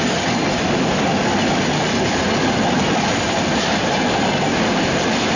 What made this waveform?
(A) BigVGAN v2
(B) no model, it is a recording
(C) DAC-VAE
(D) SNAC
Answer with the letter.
B